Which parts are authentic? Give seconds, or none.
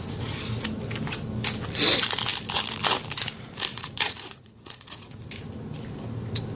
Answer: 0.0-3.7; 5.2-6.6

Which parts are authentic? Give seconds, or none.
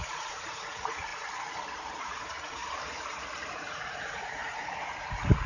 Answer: 1.1-2.0; 2.6-3.5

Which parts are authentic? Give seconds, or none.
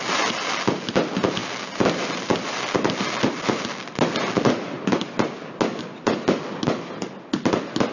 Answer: 0.0-7.9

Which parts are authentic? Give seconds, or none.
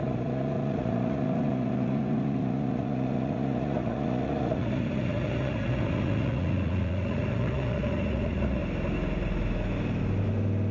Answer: 8.6-10.7